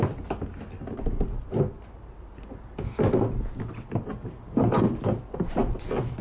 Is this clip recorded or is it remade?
recorded